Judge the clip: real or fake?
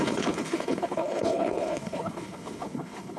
fake